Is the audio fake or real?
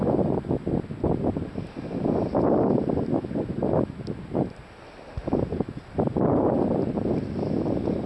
real